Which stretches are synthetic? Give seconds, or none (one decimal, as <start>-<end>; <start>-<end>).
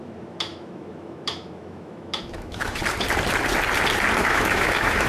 0.0-2.8; 4.2-5.1